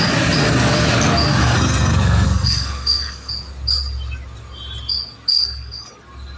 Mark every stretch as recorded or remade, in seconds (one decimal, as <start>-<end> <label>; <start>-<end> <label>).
0.0-1.4 recorded; 1.4-3.3 remade; 3.3-5.3 recorded; 5.3-5.9 remade; 5.9-6.4 recorded